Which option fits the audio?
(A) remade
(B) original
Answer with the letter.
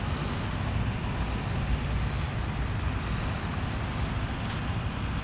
B